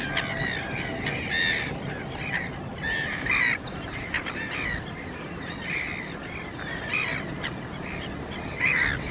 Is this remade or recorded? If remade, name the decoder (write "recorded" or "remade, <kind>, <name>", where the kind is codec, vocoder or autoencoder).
recorded